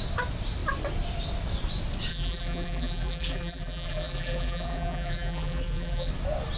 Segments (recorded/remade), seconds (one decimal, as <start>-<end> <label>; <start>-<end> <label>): 0.0-2.1 recorded; 2.1-6.1 remade; 6.1-6.6 recorded